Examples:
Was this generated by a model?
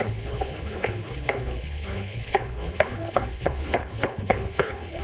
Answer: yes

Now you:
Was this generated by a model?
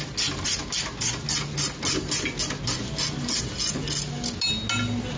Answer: no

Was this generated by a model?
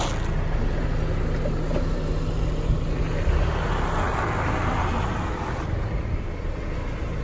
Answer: no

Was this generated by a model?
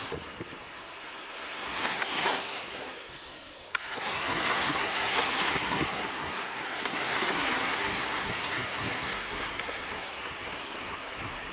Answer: yes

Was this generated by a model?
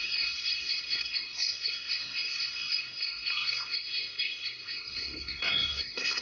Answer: yes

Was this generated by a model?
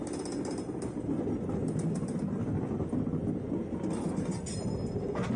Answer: no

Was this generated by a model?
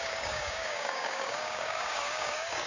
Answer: yes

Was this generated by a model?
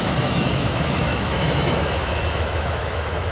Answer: yes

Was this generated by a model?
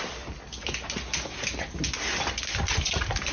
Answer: no